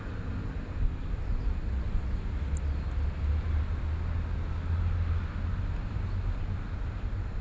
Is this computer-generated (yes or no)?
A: no